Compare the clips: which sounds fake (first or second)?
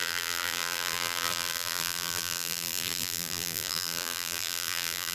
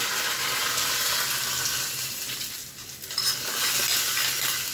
first